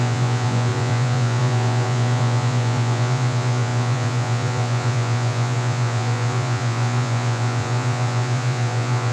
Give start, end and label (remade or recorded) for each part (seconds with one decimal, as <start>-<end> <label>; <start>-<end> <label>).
0.0-9.1 remade

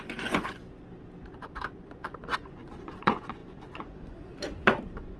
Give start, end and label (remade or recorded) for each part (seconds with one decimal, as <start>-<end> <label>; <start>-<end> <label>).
0.0-0.6 remade; 0.6-1.7 recorded; 1.7-5.2 remade

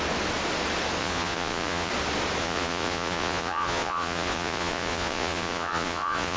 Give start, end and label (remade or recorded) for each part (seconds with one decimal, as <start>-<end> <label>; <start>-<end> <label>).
0.0-1.0 recorded; 1.0-1.9 remade; 1.9-2.4 recorded; 2.4-6.4 remade

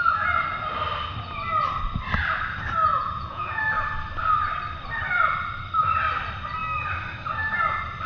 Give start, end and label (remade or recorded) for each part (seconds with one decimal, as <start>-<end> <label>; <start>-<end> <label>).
0.0-2.9 recorded; 2.9-3.6 remade; 3.6-8.1 recorded

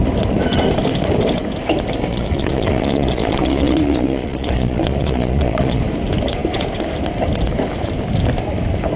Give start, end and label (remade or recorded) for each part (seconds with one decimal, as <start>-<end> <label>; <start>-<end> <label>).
0.0-2.1 recorded; 2.1-5.8 remade; 5.8-9.0 recorded

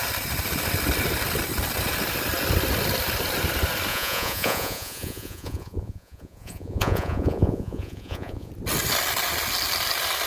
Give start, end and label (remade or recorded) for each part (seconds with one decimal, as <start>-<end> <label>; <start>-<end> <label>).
0.0-3.9 recorded; 3.9-8.5 remade; 8.5-10.3 recorded